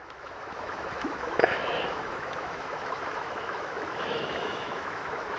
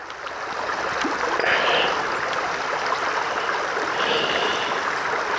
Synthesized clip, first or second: first